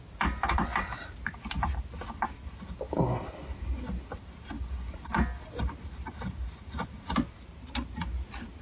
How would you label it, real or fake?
real